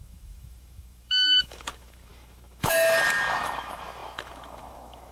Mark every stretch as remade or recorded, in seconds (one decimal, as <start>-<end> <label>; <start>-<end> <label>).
0.0-5.1 remade